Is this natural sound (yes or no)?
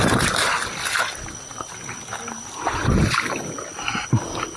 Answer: yes